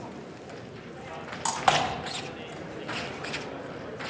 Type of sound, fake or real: real